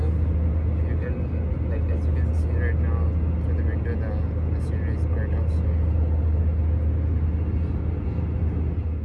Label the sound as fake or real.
real